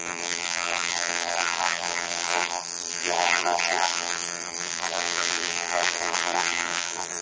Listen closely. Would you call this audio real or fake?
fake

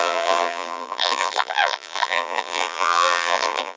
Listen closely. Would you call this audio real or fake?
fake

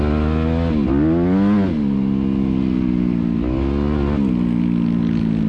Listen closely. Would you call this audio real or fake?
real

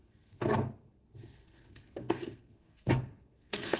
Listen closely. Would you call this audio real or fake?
fake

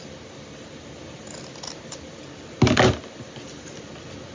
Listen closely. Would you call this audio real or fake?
real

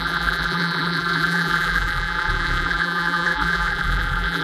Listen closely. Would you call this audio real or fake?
fake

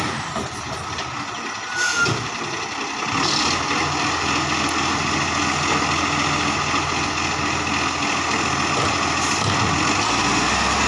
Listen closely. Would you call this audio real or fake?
real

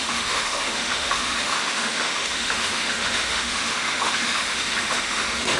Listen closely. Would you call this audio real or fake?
fake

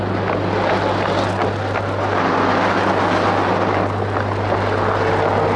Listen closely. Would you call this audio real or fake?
real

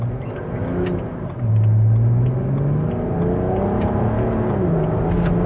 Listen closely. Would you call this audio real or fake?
real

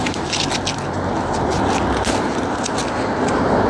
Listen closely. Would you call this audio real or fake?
real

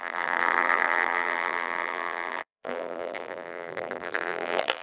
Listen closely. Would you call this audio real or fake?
fake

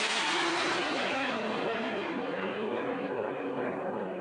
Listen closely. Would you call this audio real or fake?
fake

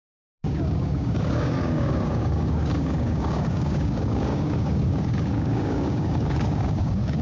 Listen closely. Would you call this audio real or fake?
fake